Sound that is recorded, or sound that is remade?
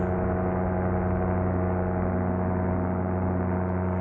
recorded